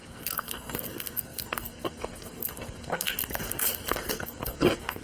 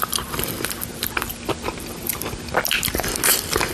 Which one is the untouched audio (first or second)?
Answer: second